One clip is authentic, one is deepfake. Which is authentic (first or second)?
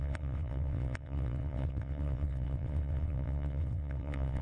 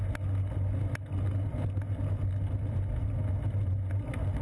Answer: second